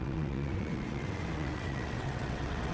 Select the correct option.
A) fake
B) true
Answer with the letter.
A